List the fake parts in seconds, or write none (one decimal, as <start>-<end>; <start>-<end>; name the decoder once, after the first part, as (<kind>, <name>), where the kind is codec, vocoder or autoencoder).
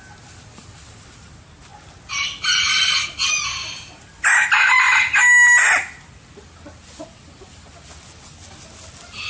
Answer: none